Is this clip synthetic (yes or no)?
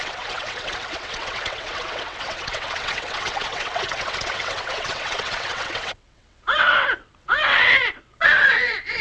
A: yes